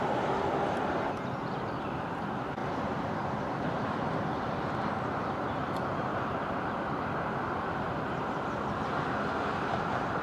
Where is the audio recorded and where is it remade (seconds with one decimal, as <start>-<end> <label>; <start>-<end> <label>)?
0.0-6.1 recorded; 6.1-8.7 remade; 8.7-10.2 recorded